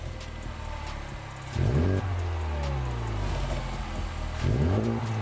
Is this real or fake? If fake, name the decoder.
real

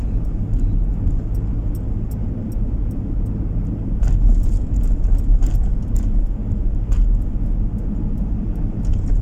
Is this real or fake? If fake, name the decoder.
real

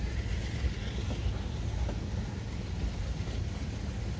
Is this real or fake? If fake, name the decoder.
real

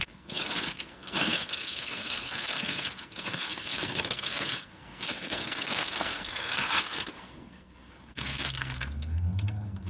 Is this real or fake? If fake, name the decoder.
fake, codec, SNAC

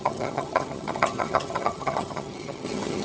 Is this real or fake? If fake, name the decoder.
fake, vocoder, HiFi-GAN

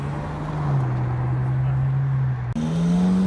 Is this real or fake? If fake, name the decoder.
real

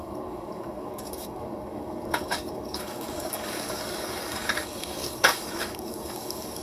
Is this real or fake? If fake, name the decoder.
fake, codec, DAC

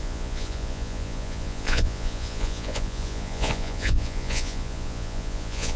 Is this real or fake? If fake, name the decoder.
fake, vocoder, Vocos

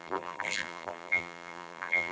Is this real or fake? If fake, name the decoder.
fake, vocoder, BigVGAN v2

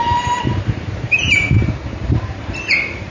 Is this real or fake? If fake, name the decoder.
fake, vocoder, BigVGAN v2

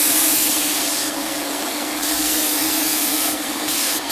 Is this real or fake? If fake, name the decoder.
fake, codec, SNAC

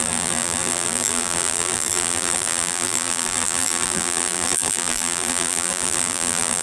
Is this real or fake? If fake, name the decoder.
fake, vocoder, BigVGAN v2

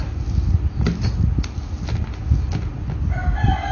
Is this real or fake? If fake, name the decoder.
real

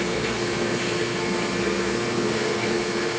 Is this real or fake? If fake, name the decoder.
fake, codec, SNAC